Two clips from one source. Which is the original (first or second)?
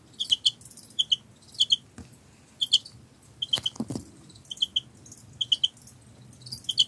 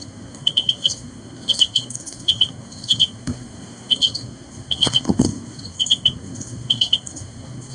first